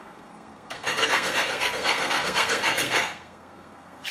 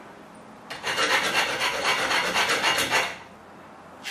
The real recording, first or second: second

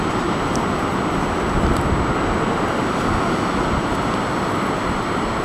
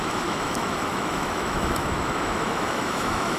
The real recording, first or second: first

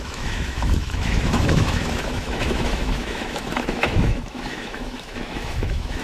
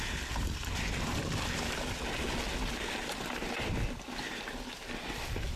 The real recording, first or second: second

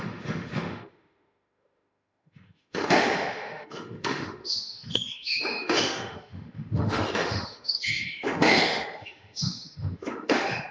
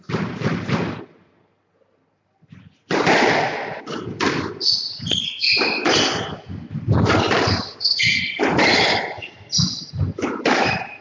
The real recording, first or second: second